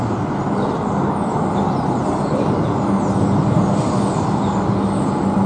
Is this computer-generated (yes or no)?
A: no